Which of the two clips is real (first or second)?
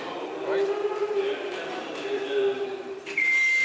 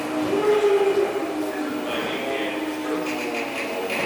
second